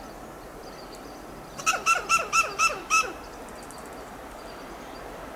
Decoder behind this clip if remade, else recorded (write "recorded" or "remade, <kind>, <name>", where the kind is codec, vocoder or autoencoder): remade, vocoder, BigVGAN v2